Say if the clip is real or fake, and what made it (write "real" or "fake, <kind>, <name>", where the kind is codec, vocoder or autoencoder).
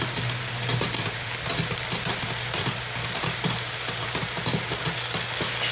real